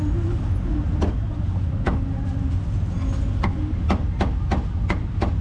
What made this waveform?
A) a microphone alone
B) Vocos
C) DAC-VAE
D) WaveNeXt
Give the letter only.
A